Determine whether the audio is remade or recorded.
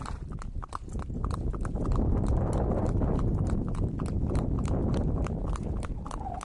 recorded